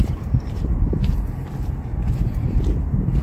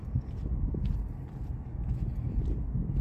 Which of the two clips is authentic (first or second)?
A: second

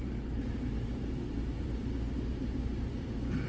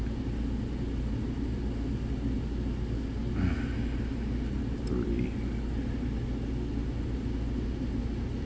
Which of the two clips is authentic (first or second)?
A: second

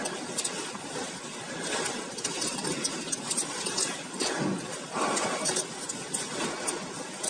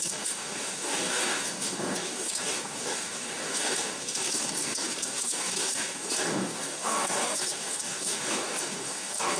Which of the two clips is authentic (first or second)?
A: first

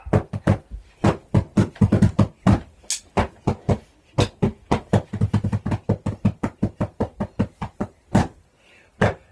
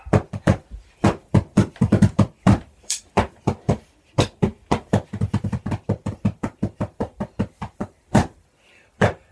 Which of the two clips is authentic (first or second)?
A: first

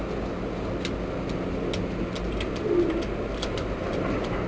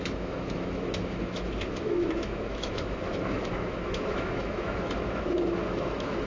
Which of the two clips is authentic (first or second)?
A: first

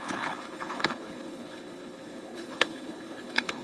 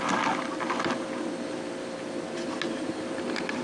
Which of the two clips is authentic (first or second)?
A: second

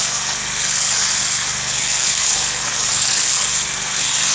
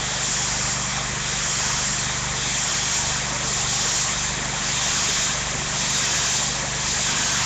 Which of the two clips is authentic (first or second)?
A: second